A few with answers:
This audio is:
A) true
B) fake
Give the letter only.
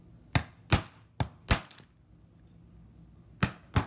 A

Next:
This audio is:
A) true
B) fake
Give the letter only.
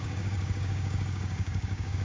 B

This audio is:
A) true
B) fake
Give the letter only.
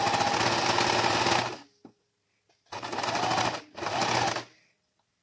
A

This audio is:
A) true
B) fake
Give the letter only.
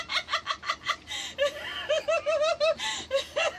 A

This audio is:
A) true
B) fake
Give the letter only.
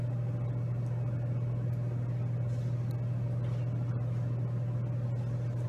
A